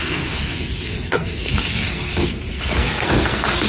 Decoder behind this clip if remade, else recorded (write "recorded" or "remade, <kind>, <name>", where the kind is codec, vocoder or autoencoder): remade, codec, SNAC